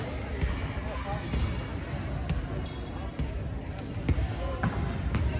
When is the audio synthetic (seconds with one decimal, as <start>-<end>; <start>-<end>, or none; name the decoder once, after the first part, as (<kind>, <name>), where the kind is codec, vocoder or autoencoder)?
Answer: none